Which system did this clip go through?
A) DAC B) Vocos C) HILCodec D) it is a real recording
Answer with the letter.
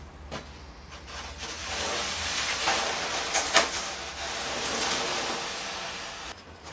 D